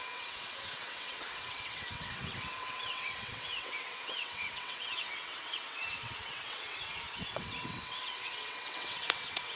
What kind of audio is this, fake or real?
fake